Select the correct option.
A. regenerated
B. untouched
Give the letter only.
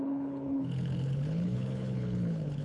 A